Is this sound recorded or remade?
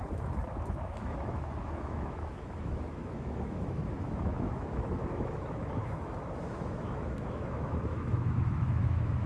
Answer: remade